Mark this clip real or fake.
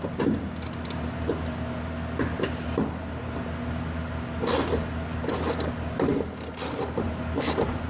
real